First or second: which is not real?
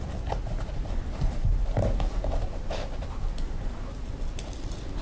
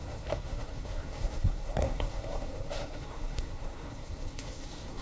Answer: second